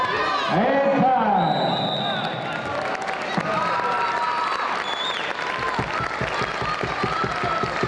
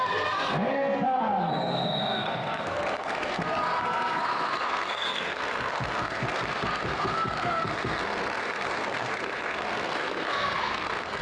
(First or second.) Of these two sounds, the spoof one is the second